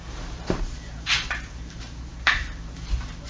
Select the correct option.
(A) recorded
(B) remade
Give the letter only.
B